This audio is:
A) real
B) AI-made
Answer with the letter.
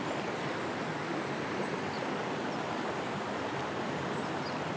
A